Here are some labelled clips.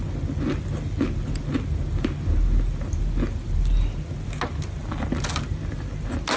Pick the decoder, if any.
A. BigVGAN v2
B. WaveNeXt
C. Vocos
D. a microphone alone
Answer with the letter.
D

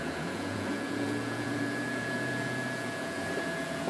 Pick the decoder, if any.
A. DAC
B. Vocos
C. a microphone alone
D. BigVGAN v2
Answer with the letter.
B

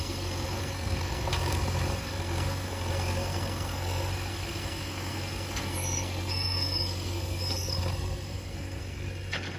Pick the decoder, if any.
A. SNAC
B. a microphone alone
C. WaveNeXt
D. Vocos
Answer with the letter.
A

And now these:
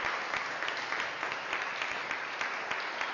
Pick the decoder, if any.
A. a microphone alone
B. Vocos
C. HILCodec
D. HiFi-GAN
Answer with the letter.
A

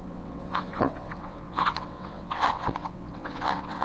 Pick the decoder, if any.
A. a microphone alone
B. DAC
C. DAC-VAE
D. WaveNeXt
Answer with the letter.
D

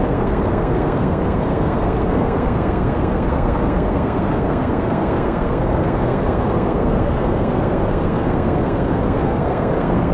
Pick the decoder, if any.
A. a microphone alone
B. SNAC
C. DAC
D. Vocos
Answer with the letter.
B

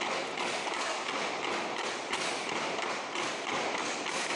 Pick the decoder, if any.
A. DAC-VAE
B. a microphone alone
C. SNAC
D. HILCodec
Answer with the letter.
B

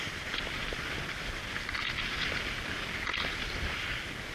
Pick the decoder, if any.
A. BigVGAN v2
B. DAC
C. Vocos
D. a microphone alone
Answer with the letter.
D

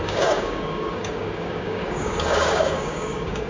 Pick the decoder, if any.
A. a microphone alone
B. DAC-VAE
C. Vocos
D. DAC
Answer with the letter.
D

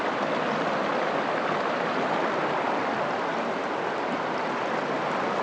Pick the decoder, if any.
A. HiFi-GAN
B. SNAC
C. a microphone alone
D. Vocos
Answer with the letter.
C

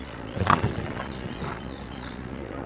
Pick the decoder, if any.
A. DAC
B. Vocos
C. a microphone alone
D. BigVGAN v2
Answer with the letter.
B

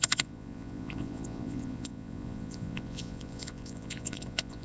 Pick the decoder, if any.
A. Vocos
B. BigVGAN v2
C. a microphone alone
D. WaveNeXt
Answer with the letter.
A